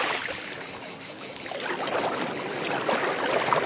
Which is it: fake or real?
real